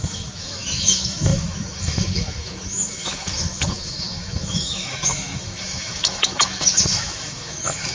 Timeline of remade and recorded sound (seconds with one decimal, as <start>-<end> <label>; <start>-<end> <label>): 0.0-7.9 remade